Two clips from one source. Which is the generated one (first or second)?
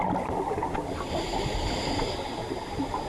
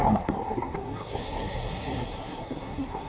second